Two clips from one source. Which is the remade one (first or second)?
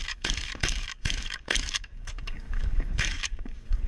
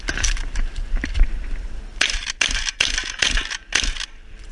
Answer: first